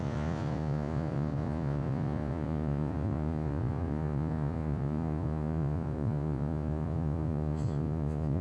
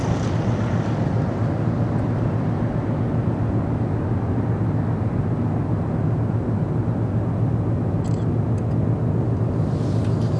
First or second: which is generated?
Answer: first